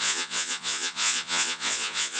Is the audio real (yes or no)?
no